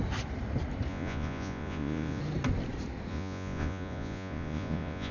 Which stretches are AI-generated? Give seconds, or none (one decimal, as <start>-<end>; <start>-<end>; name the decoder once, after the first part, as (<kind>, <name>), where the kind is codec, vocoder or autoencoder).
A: 0.9-2.2 (vocoder, Vocos); 3.1-5.1